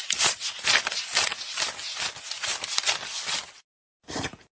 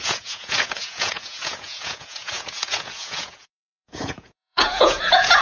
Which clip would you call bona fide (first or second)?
first